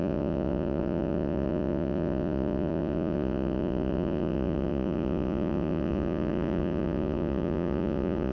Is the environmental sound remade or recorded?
remade